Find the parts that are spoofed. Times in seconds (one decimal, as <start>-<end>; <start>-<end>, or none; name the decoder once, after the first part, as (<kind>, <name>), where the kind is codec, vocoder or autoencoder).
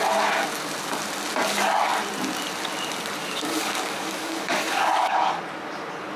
3.2-5.3 (codec, DAC)